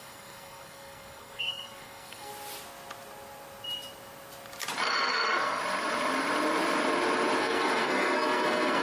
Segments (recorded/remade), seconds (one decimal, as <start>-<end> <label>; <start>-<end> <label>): 0.0-2.3 remade; 2.3-5.0 recorded; 5.0-5.6 remade; 5.6-7.4 recorded; 7.4-8.8 remade